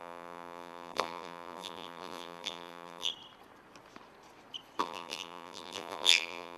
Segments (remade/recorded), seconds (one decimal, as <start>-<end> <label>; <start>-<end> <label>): 0.0-3.1 remade; 3.1-4.8 recorded; 4.8-6.6 remade